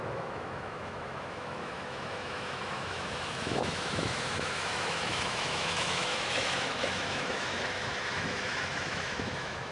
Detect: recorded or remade remade